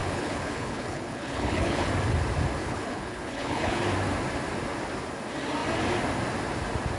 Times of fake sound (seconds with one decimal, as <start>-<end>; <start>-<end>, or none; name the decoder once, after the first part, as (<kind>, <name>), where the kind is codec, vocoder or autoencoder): 0.0-1.9 (codec, HILCodec); 2.6-3.8

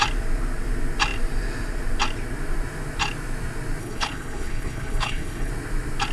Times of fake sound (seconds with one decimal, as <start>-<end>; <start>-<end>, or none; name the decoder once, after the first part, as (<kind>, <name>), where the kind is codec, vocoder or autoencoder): 3.8-5.5 (codec, HILCodec)